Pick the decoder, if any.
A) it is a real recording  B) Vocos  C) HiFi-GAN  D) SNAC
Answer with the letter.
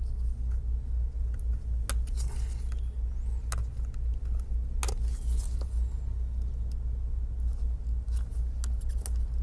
A